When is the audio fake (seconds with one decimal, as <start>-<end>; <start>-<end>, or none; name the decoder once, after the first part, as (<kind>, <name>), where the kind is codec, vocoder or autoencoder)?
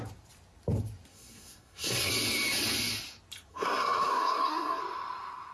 1.1-2.1 (codec, SNAC); 3.5-4.8